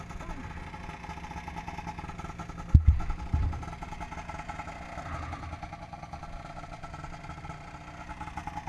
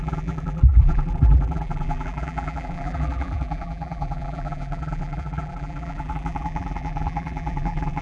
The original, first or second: first